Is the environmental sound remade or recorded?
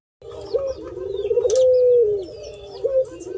recorded